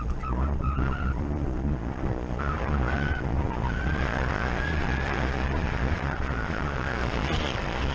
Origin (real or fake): fake